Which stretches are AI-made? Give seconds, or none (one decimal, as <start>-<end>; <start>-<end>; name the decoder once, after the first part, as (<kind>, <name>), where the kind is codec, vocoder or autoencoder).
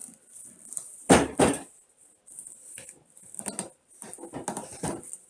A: none